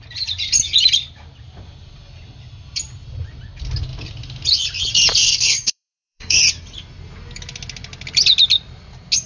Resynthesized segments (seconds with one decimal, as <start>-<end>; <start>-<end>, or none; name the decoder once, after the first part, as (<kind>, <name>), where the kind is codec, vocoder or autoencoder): 5.2-6.4 (codec, SNAC)